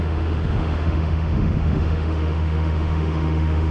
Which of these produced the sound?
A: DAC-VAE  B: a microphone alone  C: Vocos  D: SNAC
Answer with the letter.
A